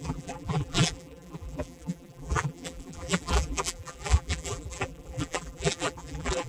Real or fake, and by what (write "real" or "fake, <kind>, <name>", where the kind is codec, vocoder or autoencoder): fake, vocoder, BigVGAN v2